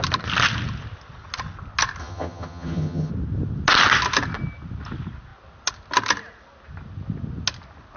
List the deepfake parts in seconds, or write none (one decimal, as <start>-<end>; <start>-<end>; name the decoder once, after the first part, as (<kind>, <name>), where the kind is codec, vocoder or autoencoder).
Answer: 2.0-3.1 (vocoder, HiFi-GAN)